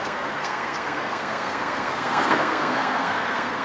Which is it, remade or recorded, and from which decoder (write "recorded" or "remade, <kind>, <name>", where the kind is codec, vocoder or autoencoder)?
remade, codec, SNAC